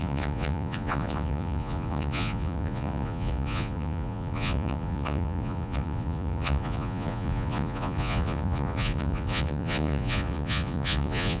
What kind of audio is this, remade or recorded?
remade